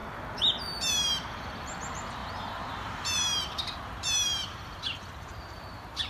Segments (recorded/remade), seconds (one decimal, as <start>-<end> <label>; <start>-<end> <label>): 0.0-0.9 recorded; 0.9-6.1 remade